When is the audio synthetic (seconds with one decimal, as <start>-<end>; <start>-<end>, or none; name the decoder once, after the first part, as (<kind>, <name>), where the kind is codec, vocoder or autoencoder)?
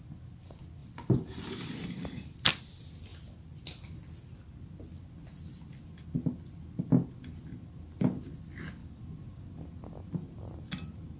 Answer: 0.8-2.6 (vocoder, BigVGAN v2); 8.8-9.4